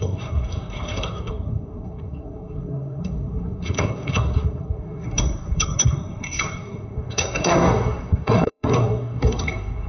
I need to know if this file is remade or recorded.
remade